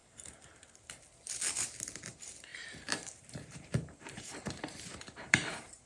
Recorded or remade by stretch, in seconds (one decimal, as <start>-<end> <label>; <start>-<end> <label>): 0.0-0.9 remade; 0.9-2.5 recorded; 2.5-5.5 remade; 5.5-5.9 recorded